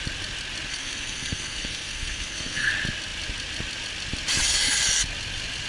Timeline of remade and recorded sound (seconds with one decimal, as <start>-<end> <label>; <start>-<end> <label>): 0.0-0.7 recorded; 0.7-2.7 remade; 2.7-5.7 recorded